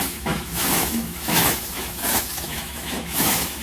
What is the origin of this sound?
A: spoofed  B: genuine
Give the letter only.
A